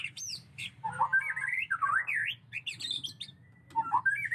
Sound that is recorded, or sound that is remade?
recorded